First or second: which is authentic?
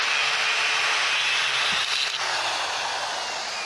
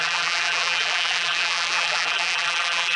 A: first